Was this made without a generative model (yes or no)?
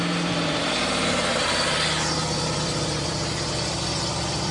no